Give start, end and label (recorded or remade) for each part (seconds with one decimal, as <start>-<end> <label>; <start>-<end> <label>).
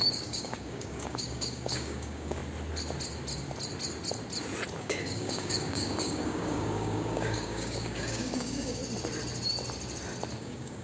0.0-2.4 remade; 2.4-4.8 recorded; 4.8-8.8 remade; 8.8-10.4 recorded; 10.4-10.8 remade